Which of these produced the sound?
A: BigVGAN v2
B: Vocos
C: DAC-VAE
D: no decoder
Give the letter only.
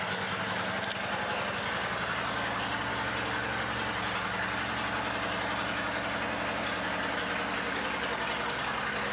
D